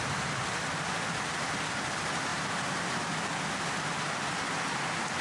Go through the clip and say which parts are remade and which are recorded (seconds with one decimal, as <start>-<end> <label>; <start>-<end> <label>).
0.0-5.2 recorded